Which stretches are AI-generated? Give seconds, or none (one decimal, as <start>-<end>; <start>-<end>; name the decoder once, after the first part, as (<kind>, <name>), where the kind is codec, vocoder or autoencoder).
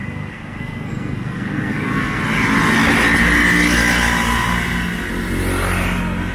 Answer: 0.0-2.2 (codec, SNAC)